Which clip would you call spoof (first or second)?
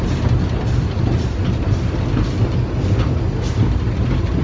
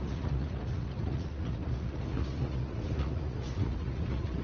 second